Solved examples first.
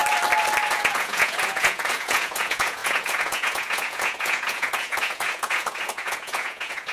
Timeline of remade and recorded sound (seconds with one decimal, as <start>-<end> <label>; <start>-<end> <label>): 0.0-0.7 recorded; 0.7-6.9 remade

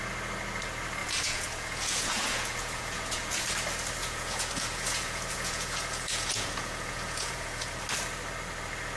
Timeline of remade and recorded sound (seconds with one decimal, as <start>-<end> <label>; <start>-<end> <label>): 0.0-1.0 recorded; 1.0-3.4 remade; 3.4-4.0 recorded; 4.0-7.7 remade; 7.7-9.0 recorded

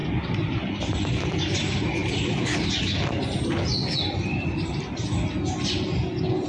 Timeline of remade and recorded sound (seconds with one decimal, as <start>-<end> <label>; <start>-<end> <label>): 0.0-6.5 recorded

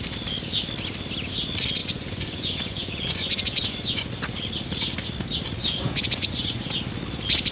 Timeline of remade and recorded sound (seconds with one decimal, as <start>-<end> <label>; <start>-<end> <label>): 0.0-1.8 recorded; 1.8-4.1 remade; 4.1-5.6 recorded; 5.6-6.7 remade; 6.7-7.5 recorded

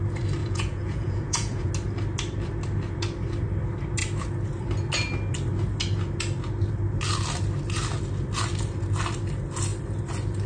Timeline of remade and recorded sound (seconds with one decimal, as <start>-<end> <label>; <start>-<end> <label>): 0.0-0.4 recorded; 0.4-1.7 remade; 1.7-10.5 recorded

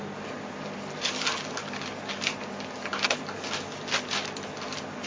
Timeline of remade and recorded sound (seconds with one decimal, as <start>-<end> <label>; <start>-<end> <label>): 0.0-5.1 recorded

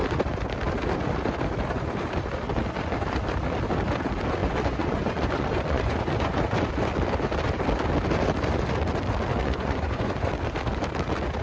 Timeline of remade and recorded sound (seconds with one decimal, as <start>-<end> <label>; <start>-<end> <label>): 0.0-4.4 recorded; 4.4-6.7 remade; 6.7-9.4 recorded; 9.4-10.3 remade; 10.3-11.4 recorded